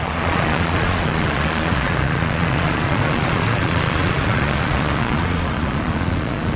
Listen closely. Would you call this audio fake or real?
fake